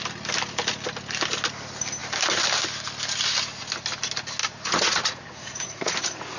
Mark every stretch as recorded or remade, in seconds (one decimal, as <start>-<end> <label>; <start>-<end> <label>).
0.0-4.4 recorded; 4.4-6.4 remade